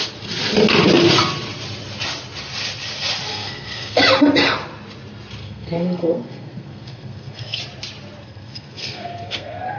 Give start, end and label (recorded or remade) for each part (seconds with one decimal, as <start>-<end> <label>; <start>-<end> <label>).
0.0-3.3 recorded; 3.3-4.0 remade; 4.0-5.4 recorded; 5.4-7.6 remade; 7.6-8.2 recorded; 8.2-9.8 remade